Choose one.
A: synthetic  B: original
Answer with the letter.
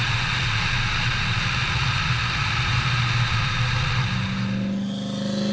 B